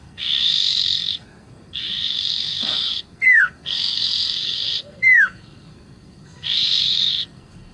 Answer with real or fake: fake